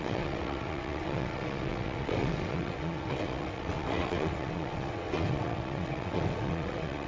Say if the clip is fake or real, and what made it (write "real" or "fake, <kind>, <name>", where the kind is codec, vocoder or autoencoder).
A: fake, vocoder, WaveNeXt